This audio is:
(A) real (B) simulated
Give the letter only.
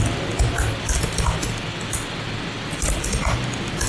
A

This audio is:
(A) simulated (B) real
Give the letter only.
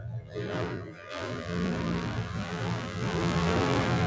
A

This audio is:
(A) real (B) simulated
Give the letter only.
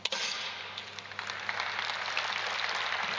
A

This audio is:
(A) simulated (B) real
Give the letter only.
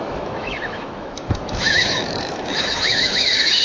A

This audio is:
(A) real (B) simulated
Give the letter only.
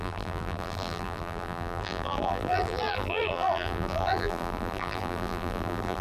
B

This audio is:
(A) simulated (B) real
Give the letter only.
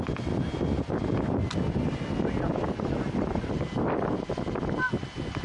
B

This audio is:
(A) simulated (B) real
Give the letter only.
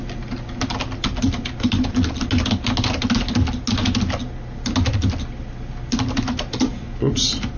B